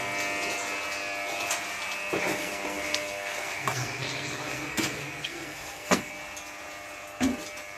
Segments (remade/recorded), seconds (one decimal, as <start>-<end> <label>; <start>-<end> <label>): 0.0-2.3 recorded; 2.3-6.1 remade; 6.1-7.8 recorded